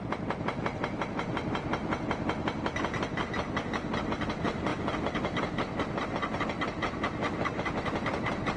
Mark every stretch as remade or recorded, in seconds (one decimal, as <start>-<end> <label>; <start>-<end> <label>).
0.0-1.8 remade; 1.8-4.3 recorded; 4.3-8.6 remade